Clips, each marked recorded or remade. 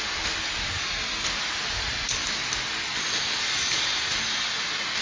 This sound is recorded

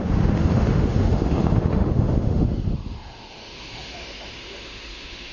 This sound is remade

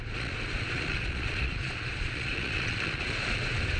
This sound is remade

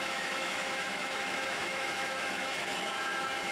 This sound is remade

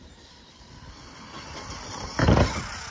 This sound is recorded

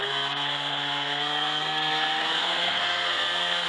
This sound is remade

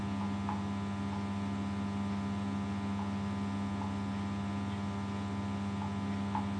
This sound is recorded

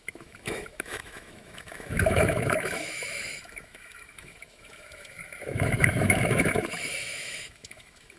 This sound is remade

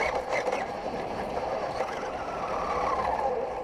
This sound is remade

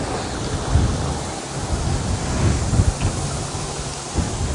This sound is recorded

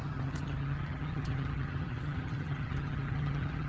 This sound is remade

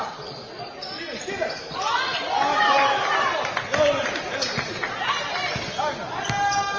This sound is recorded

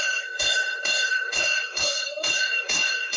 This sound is remade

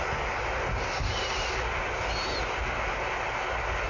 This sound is recorded